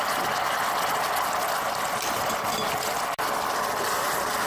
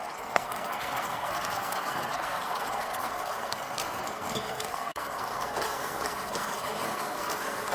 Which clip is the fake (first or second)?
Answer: second